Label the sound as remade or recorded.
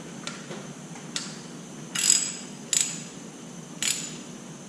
recorded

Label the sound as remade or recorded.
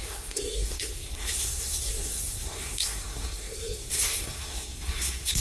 remade